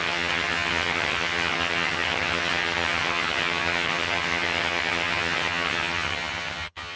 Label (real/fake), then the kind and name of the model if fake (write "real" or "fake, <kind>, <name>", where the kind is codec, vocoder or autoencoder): fake, vocoder, HiFi-GAN